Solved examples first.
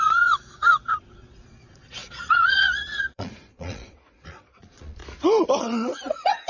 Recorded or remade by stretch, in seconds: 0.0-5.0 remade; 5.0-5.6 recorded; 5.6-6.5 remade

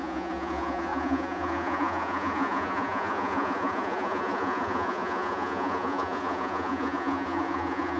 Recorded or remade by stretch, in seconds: 0.0-8.0 remade

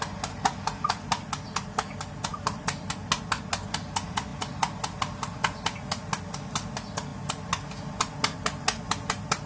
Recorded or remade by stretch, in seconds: 0.0-9.5 recorded

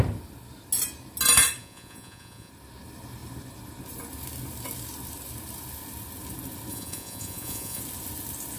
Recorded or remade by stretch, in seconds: 0.0-1.6 recorded; 1.6-2.5 remade; 2.5-6.7 recorded; 6.7-7.8 remade; 7.8-8.6 recorded